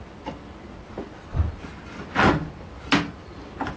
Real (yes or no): yes